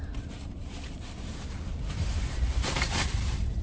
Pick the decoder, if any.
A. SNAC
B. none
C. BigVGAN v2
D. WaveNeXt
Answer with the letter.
C